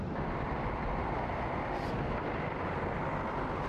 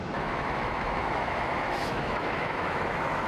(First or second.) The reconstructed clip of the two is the second